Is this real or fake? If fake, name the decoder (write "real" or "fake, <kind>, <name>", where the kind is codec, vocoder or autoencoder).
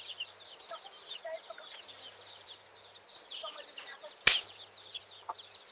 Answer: real